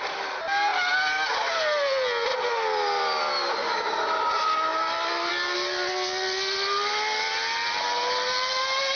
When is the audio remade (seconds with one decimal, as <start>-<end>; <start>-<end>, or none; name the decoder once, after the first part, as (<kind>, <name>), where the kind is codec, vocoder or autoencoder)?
none